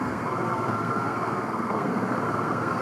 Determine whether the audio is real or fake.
fake